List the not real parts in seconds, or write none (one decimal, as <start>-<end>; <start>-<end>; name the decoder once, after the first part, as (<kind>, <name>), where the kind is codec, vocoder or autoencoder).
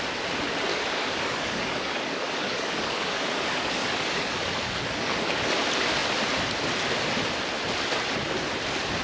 0.7-5.5 (codec, DAC)